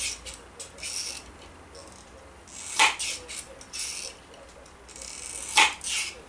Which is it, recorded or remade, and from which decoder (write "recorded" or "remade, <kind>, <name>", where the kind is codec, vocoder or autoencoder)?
recorded